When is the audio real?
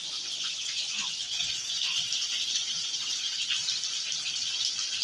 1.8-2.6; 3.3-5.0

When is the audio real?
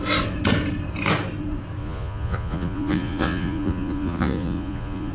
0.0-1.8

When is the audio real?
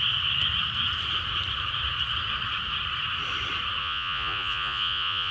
0.0-3.8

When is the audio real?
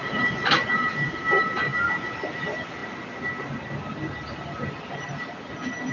0.0-5.9